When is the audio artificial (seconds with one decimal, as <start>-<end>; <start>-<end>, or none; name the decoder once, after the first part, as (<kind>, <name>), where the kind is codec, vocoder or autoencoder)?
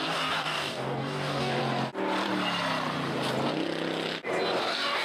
0.0-1.6 (codec, DAC); 4.6-5.0